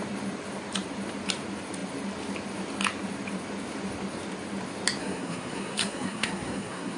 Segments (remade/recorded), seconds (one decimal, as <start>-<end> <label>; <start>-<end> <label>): 0.0-5.0 recorded; 5.0-7.0 remade